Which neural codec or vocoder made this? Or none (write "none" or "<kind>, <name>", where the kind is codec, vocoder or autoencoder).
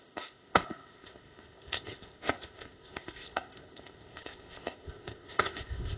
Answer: codec, ZipCodec